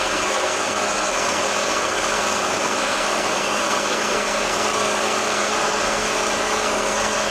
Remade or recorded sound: remade